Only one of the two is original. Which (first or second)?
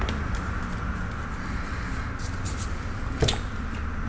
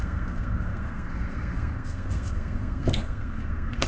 first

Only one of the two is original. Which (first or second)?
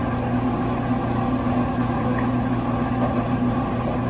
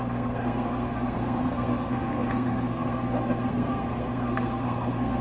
first